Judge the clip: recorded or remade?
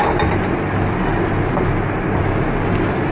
recorded